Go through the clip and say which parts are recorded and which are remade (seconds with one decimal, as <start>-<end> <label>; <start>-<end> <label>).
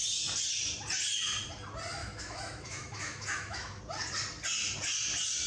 0.0-2.0 recorded; 2.0-3.8 remade; 3.8-5.5 recorded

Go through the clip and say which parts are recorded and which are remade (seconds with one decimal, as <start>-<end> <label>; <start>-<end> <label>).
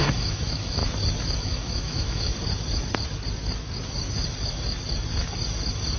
0.0-0.8 remade; 0.8-1.4 recorded; 1.4-2.3 remade; 2.3-6.0 recorded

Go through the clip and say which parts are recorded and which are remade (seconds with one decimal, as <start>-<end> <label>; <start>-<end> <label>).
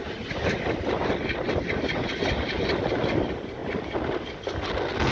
0.0-5.1 recorded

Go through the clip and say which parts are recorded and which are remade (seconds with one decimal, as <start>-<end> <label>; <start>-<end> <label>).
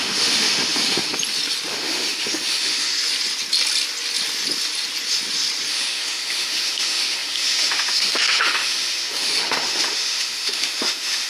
0.0-1.1 remade; 1.1-1.7 recorded; 1.7-2.9 remade; 2.9-5.7 recorded; 5.7-11.3 remade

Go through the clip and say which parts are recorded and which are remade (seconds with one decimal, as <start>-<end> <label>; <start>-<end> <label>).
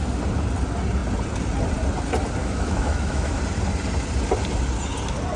0.0-2.4 recorded; 2.4-3.4 remade; 3.4-5.4 recorded